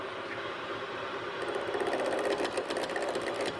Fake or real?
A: real